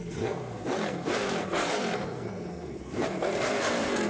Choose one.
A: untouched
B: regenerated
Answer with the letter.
B